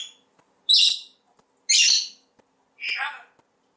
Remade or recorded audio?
recorded